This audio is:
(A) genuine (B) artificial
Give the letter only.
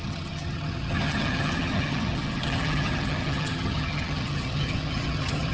B